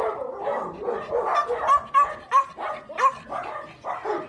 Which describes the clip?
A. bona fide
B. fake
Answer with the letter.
A